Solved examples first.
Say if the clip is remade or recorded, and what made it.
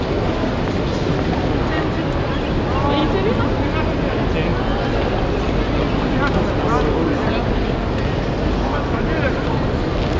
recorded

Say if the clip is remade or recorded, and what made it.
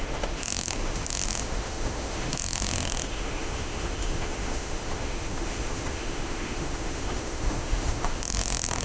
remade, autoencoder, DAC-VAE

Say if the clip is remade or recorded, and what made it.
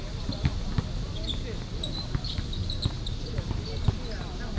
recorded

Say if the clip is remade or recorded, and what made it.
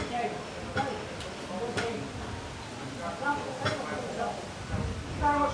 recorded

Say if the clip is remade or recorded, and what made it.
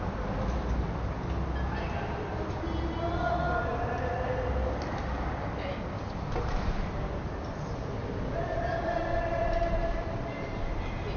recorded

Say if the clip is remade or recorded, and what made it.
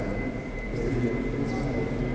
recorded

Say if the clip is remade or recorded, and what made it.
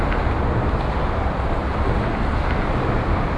recorded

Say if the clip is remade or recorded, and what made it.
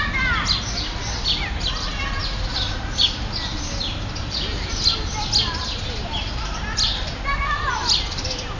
recorded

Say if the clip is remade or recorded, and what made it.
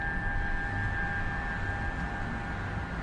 recorded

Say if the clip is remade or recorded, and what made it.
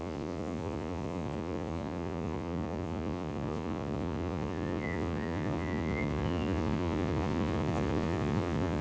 remade, vocoder, Vocos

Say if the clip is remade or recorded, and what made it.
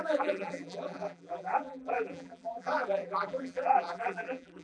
remade, vocoder, BigVGAN v2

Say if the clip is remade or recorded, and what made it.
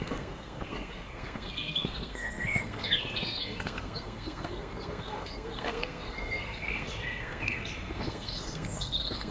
remade, codec, SNAC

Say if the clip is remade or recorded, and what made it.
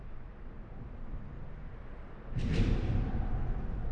remade, vocoder, BigVGAN v2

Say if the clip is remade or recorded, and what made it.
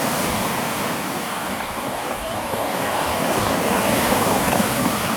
remade, codec, DAC